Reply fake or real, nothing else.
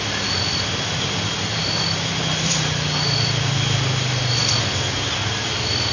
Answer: real